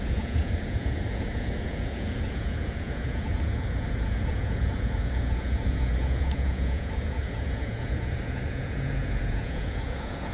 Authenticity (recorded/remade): remade